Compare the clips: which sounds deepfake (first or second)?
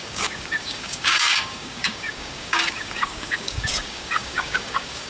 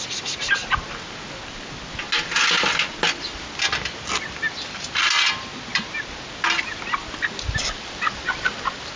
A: first